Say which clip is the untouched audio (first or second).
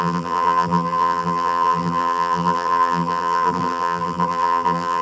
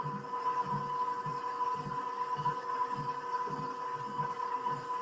second